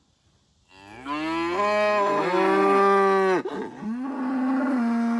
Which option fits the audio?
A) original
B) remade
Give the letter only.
A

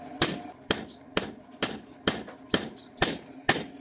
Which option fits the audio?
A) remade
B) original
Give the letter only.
A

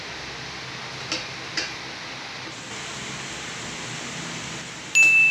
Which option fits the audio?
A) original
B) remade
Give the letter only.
A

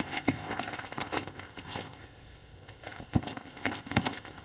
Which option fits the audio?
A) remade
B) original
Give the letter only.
A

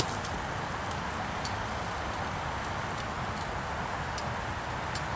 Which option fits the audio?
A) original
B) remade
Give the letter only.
A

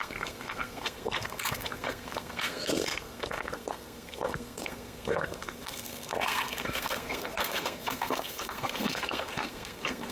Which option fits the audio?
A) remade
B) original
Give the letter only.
A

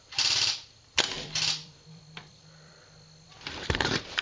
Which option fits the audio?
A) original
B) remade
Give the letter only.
B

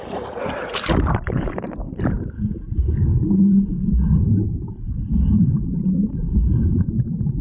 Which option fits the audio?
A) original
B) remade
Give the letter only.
B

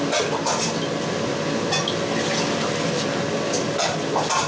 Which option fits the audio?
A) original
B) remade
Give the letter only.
A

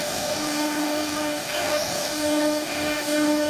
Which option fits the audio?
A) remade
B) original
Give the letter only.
A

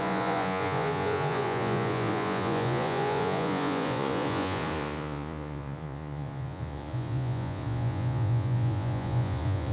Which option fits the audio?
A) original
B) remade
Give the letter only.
B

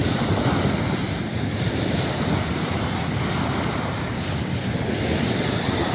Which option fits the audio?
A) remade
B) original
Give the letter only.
B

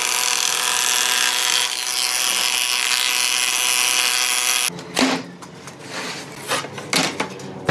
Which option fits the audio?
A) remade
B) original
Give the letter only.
B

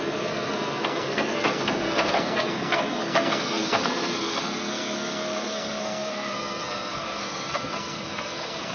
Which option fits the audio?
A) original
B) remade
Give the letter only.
B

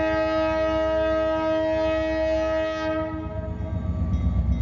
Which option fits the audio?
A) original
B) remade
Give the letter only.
A